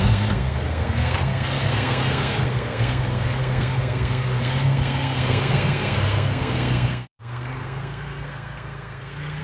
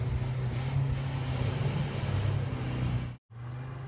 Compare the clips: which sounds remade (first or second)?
first